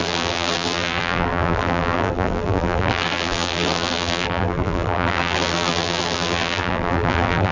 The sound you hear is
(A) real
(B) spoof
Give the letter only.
B